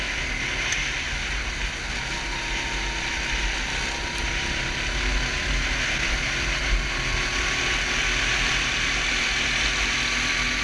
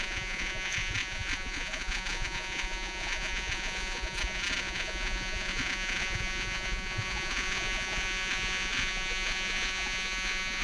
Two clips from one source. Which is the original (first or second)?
first